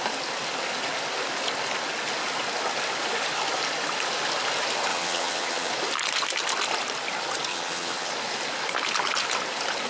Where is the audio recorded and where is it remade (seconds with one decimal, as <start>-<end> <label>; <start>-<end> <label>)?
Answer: 0.0-4.9 recorded; 4.9-5.7 remade; 5.7-7.5 recorded; 7.5-8.1 remade; 8.1-9.9 recorded